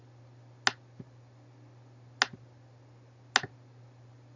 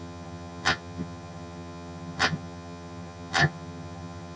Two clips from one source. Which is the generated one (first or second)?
second